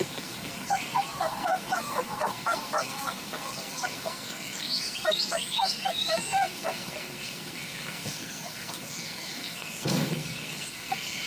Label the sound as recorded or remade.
remade